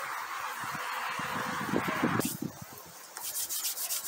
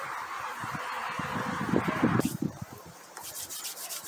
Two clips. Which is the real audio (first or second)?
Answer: first